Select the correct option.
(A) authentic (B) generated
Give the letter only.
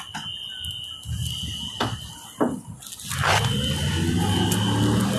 A